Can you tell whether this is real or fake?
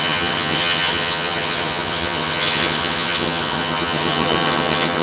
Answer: fake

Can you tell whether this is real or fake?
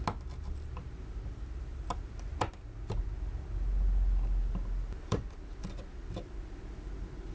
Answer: real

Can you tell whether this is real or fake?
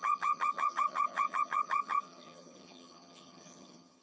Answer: fake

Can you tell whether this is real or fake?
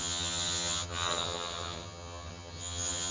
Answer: fake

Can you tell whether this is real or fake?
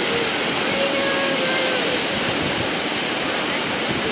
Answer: real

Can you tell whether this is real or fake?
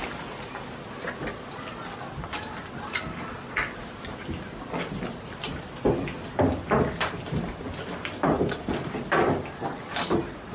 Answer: real